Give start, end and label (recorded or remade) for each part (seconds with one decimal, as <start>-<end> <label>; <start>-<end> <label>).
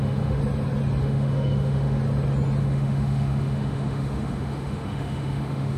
0.0-0.4 remade; 0.4-1.0 recorded; 1.0-2.0 remade; 2.0-2.6 recorded; 2.6-5.8 remade